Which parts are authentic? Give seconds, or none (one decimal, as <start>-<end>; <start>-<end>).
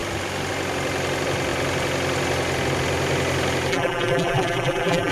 0.0-3.7